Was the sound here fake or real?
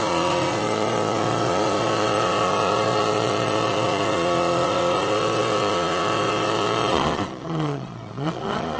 fake